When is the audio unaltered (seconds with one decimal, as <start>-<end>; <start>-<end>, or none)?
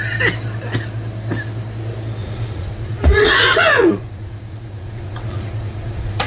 0.0-2.2